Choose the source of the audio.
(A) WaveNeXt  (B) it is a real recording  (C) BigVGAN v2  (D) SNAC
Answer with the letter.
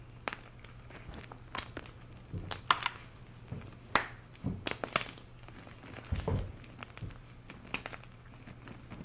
B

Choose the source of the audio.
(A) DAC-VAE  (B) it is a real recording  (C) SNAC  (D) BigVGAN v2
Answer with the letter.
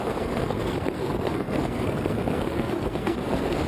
C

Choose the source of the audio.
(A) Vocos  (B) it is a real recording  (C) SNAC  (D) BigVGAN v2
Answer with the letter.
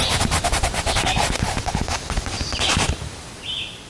D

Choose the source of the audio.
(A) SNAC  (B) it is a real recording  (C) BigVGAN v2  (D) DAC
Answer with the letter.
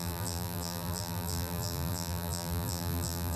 C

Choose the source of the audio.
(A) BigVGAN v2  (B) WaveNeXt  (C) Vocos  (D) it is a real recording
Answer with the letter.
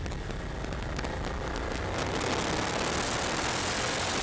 D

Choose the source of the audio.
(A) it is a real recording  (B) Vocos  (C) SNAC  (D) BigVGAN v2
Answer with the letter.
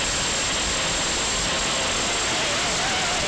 A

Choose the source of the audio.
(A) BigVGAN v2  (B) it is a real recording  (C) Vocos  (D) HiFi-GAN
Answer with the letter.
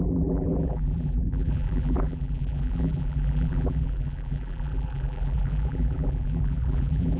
A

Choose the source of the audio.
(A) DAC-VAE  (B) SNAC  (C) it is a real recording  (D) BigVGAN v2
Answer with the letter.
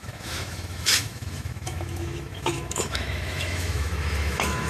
A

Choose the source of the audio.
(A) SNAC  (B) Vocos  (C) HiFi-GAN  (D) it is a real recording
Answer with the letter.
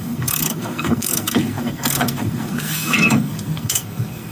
A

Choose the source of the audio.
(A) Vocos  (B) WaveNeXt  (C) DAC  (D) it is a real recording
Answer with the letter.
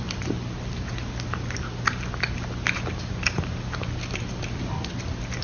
D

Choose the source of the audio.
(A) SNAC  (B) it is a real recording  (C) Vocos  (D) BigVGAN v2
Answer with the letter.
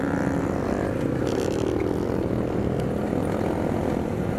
B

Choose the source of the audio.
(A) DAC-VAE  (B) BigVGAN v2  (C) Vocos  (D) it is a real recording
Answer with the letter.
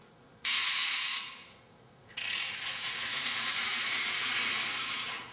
C